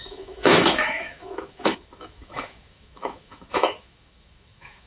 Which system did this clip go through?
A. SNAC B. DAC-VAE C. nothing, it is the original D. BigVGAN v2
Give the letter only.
B